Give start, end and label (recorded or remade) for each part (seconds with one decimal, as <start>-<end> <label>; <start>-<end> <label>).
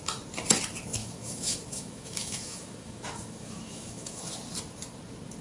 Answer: 0.0-1.0 recorded; 1.0-4.2 remade; 4.2-5.4 recorded